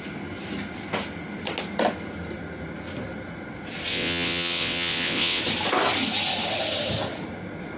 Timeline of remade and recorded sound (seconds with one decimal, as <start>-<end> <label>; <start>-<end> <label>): 0.0-3.9 recorded; 3.9-5.4 remade; 5.4-7.8 recorded